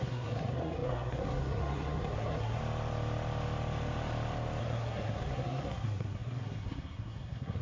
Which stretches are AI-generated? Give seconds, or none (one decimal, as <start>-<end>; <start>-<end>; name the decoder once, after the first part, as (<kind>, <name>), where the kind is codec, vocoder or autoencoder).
0.0-2.6 (codec, SNAC); 4.6-7.6